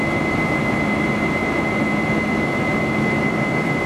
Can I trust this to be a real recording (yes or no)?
no